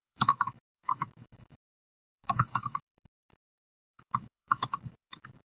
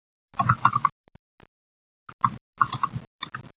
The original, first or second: second